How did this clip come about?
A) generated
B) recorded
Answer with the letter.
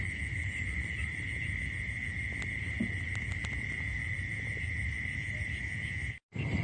B